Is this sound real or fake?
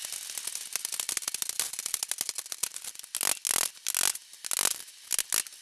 real